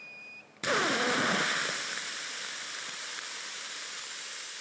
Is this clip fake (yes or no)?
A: yes